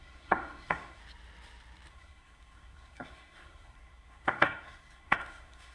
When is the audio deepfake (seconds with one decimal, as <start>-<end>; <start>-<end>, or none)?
0.0-1.0; 1.9-5.7